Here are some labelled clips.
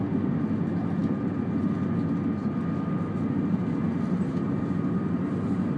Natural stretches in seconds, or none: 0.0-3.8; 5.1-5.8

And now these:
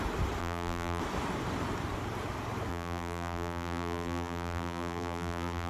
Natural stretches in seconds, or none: 0.0-0.4; 1.0-2.7

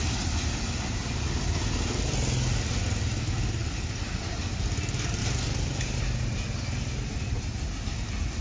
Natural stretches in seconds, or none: 0.0-5.2; 6.0-8.4

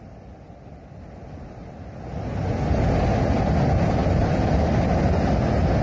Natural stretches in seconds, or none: 0.0-4.0; 5.0-5.8

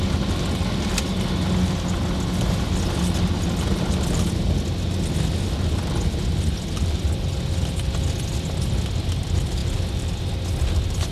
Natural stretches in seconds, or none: 0.0-11.1

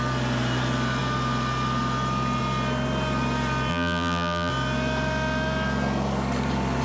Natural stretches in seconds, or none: 0.0-3.7; 4.5-6.8

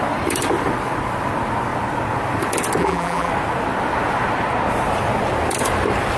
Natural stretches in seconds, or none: 0.0-2.8; 3.3-6.2